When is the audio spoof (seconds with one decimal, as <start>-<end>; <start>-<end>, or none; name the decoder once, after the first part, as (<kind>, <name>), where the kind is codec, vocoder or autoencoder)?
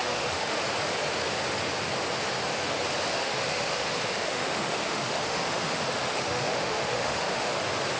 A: 0.0-0.6 (autoencoder, DAC-VAE); 3.1-7.5